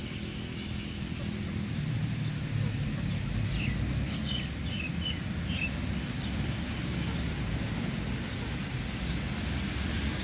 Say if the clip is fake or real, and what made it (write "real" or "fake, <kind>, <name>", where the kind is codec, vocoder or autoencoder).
real